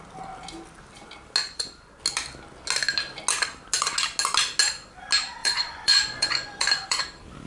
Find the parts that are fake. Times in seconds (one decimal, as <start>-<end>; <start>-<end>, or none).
1.4-2.0; 5.4-7.0